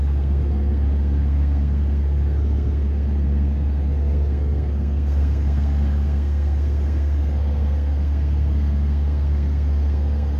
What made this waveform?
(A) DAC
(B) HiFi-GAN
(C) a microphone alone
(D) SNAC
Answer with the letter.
D